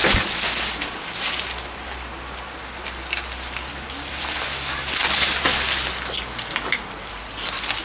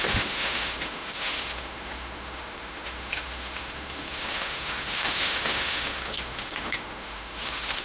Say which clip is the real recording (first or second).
first